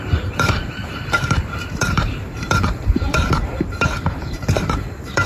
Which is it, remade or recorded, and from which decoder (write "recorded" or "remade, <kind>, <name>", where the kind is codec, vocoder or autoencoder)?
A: remade, vocoder, BigVGAN v2